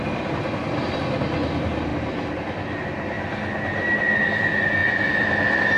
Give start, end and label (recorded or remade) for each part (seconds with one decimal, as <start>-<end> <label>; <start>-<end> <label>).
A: 0.0-5.8 recorded

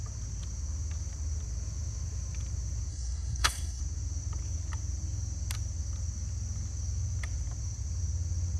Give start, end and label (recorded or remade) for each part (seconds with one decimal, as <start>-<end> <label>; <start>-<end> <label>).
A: 0.0-2.9 recorded; 2.9-3.8 remade; 3.8-8.6 recorded

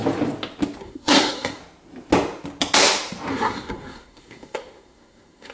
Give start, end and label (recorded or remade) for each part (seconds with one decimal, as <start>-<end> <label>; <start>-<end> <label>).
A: 0.0-0.8 recorded; 0.8-1.6 remade; 1.6-3.3 recorded; 3.3-5.5 remade